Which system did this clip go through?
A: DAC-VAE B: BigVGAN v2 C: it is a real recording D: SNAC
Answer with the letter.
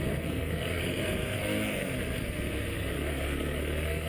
D